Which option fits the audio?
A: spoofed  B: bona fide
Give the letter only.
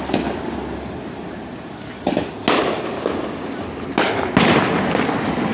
B